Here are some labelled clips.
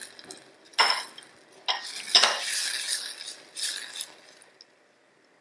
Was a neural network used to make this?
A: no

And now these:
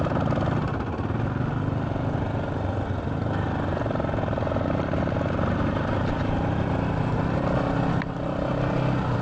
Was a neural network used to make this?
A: no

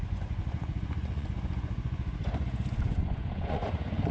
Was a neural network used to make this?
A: yes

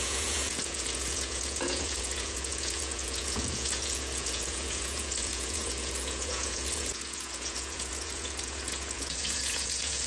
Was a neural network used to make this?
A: yes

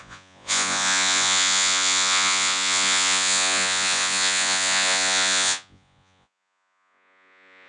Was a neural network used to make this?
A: yes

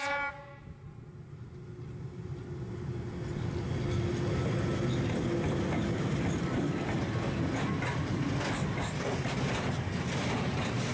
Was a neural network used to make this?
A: no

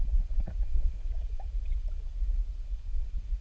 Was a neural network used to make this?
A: yes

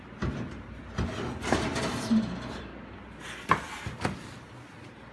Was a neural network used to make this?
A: no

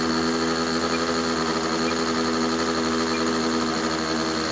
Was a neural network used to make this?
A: no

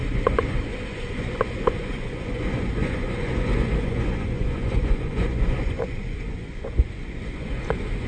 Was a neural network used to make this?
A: yes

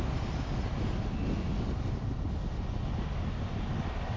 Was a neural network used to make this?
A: no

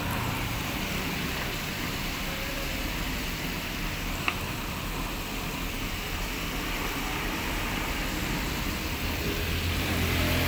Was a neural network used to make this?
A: no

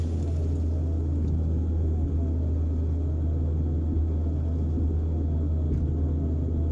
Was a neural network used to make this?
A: no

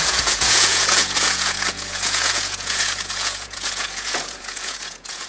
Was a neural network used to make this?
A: yes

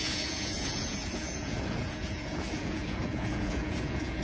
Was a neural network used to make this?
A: yes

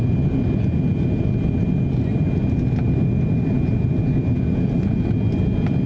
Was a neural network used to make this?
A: no